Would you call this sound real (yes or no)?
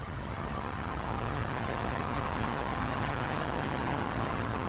no